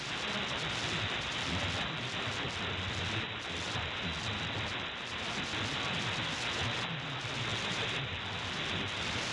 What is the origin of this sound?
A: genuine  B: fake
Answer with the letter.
A